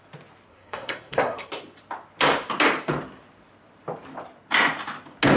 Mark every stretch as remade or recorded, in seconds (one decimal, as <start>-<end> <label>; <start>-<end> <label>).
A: 0.0-0.5 recorded; 0.5-1.5 remade; 1.5-5.4 recorded